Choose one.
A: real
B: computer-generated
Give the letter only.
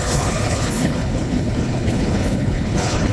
B